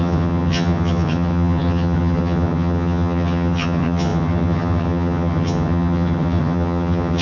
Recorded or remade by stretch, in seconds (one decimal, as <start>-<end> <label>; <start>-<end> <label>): 0.0-7.2 remade